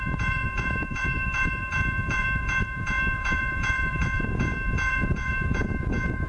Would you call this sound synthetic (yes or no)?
yes